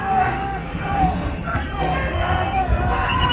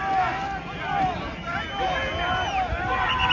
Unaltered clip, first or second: second